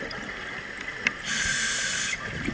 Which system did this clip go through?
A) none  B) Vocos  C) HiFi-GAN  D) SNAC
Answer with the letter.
A